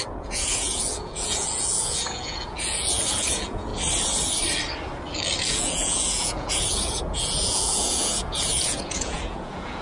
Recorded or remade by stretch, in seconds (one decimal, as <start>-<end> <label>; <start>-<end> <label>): 0.0-3.7 remade; 3.7-5.4 recorded; 5.4-9.8 remade